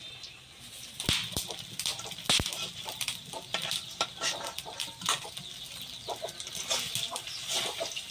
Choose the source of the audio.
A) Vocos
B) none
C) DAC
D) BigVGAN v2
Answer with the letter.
B